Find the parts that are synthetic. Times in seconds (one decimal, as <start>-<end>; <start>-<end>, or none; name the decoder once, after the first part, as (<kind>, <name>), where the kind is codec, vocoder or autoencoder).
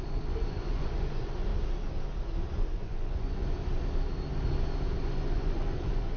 0.0-1.5 (vocoder, Vocos); 2.7-3.6; 5.0-6.2